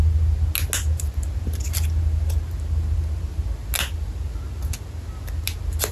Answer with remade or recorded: recorded